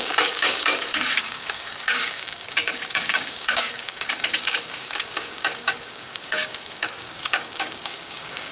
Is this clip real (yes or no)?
no